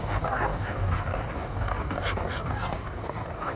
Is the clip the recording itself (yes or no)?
no